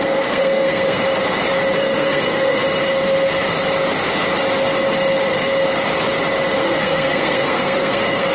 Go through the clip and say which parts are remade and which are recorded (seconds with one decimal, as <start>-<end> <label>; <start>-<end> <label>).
0.0-1.0 remade; 1.0-1.8 recorded; 1.8-2.6 remade; 2.6-6.6 recorded; 6.6-8.3 remade